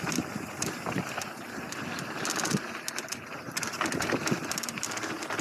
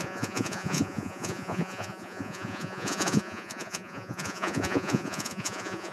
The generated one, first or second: second